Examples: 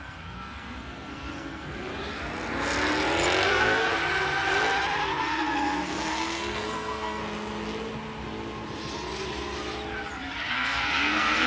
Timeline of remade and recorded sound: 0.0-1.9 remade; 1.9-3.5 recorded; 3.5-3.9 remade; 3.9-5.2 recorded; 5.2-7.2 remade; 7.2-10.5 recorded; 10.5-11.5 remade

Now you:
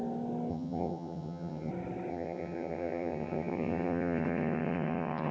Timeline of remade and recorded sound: 0.0-0.5 recorded; 0.5-1.7 remade; 1.7-2.1 recorded; 2.1-5.3 remade